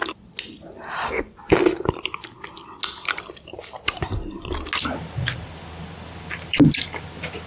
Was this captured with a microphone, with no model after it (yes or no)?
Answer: yes